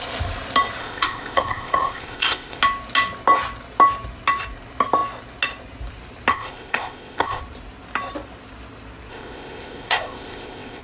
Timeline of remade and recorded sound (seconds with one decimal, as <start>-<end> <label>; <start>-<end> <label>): 0.0-0.8 recorded; 0.8-2.6 remade; 2.6-6.3 recorded; 6.3-7.4 remade; 7.4-9.1 recorded; 9.1-10.8 remade